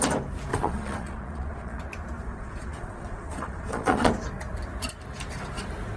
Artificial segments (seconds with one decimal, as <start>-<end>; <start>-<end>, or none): 0.5-1.8; 2.3-4.1